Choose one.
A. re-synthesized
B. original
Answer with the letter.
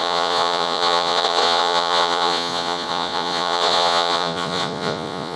A